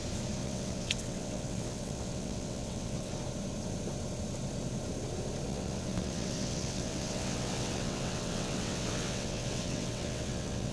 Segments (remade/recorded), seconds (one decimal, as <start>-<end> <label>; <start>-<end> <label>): 0.0-0.4 recorded; 0.4-3.1 remade; 3.1-5.5 recorded; 5.5-10.7 remade